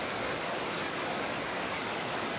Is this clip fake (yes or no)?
yes